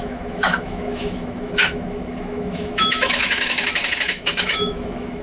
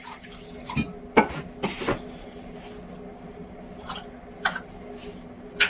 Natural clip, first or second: second